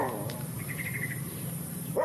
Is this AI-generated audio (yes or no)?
yes